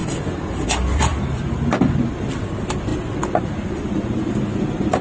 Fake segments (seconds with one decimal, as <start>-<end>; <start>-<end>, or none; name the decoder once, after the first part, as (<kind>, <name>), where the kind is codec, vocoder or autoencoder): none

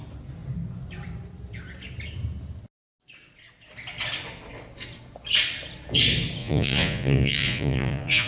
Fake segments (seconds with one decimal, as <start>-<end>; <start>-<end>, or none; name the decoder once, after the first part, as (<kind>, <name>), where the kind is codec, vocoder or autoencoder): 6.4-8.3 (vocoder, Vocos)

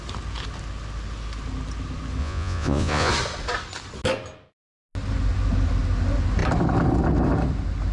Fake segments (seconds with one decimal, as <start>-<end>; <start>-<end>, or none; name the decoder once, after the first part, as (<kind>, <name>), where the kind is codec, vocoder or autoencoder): 2.2-3.1 (vocoder, Vocos)